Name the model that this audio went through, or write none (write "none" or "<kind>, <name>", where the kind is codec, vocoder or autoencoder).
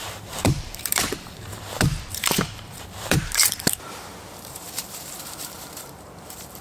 vocoder, BigVGAN v2